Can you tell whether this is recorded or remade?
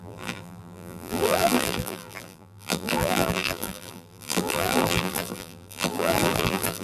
remade